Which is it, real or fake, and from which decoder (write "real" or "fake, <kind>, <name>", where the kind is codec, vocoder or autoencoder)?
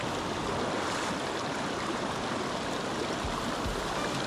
real